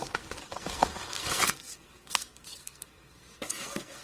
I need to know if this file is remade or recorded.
remade